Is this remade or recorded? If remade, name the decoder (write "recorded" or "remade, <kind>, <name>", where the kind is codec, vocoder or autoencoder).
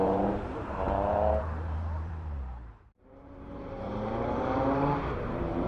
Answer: remade, vocoder, BigVGAN v2